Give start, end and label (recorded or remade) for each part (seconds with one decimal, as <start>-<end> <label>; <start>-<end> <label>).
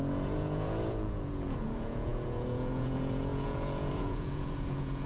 0.0-5.1 remade